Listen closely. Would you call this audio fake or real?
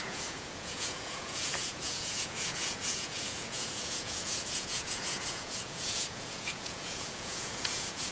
fake